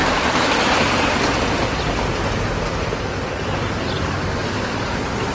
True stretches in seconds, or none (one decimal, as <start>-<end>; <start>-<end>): 0.0-5.3